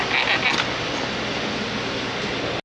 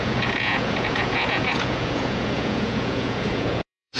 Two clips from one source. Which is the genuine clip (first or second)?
first